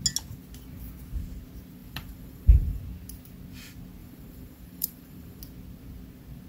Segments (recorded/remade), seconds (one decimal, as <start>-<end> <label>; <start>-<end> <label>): 0.0-1.8 recorded; 1.8-2.8 remade; 2.8-4.0 recorded; 4.0-5.4 remade; 5.4-6.5 recorded